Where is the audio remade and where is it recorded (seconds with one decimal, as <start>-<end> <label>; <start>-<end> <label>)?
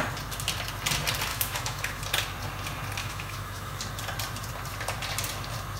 0.0-1.3 recorded; 1.3-2.0 remade; 2.0-3.0 recorded; 3.0-3.8 remade; 3.8-5.8 recorded